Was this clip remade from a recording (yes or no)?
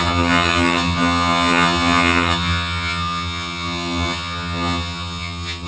yes